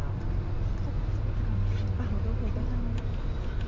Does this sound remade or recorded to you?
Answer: recorded